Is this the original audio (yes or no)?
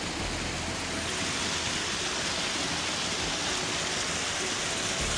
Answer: yes